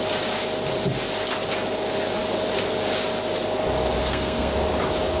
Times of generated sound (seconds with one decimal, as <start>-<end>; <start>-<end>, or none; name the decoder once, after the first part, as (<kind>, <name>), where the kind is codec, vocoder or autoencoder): 4.0-4.5 (codec, SNAC)